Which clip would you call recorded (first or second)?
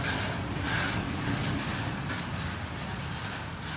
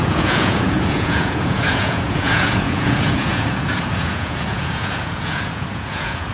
first